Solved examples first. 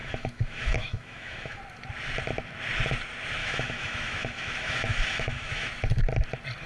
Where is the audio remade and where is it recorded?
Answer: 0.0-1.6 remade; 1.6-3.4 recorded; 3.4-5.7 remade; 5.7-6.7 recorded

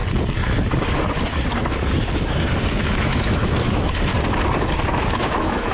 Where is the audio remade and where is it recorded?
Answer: 0.0-2.8 recorded; 2.8-4.1 remade; 4.1-5.1 recorded; 5.1-5.7 remade

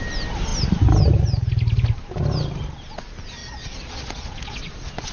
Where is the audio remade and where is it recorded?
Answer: 0.0-3.4 recorded; 3.4-5.1 remade

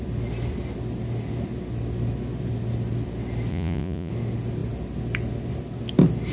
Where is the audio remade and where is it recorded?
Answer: 0.0-3.5 recorded; 3.5-4.1 remade; 4.1-6.3 recorded

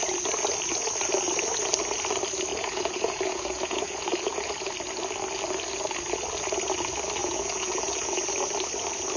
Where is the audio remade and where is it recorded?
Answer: 0.0-2.5 recorded; 2.5-4.7 remade; 4.7-7.2 recorded; 7.2-8.2 remade; 8.2-9.2 recorded

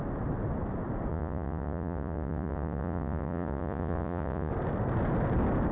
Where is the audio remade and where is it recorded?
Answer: 0.0-1.1 recorded; 1.1-4.5 remade; 4.5-5.7 recorded

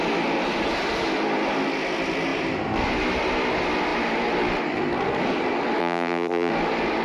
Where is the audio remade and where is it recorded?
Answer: 0.0-5.8 recorded; 5.8-6.5 remade; 6.5-7.0 recorded

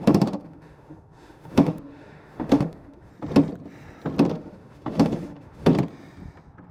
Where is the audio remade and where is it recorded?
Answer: 0.0-3.1 remade; 3.1-4.3 recorded; 4.3-5.7 remade; 5.7-6.7 recorded